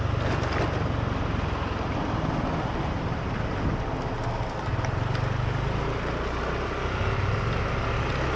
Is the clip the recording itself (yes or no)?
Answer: yes